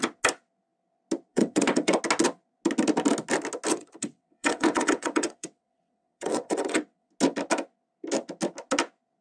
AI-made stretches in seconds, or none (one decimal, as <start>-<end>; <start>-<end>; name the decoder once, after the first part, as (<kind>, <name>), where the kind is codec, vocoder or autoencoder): 1.3-2.0 (vocoder, WaveNeXt); 3.7-7.1